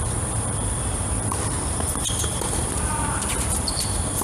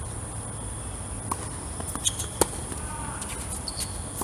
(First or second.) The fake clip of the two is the first